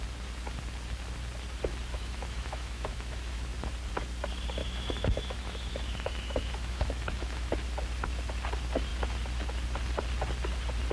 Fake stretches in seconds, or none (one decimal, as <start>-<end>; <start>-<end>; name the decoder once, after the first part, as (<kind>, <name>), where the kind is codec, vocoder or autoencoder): 1.9-3.4 (autoencoder, DAC-VAE); 4.6-7.5